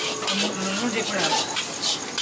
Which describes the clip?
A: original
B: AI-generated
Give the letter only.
A